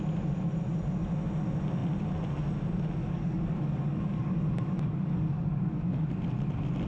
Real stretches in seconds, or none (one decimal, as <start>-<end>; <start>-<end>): 0.0-3.0; 6.1-6.9